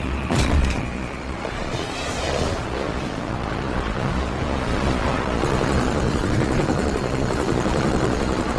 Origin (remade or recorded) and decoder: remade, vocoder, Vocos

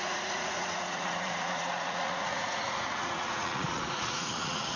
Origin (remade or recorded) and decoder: remade, vocoder, Vocos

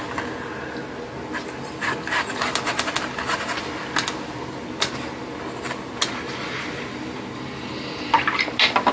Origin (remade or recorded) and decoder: recorded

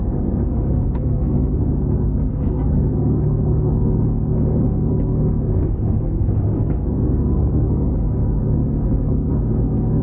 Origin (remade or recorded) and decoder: remade, codec, SNAC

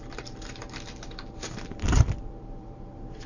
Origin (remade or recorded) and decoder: remade, vocoder, BigVGAN v2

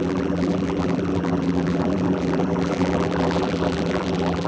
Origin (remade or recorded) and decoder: remade, vocoder, BigVGAN v2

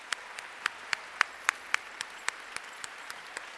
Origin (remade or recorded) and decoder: recorded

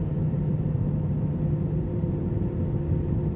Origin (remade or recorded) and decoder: remade, vocoder, BigVGAN v2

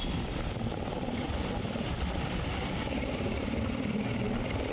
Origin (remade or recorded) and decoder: recorded